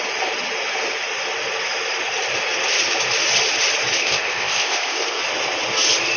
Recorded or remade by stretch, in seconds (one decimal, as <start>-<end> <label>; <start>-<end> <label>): 0.0-4.0 recorded; 4.0-5.2 remade; 5.2-6.2 recorded